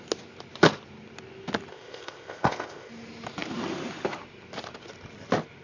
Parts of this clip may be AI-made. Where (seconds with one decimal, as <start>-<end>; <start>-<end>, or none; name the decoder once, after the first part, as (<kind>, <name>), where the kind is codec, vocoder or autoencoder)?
1.7-2.9 (codec, ZipCodec)